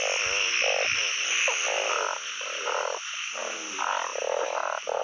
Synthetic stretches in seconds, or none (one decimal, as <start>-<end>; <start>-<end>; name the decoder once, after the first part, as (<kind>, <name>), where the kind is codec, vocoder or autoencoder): none

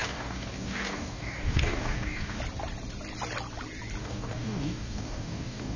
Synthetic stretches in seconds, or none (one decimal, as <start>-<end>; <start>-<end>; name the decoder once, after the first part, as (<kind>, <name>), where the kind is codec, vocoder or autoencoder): 0.0-2.4 (codec, DAC); 4.0-5.8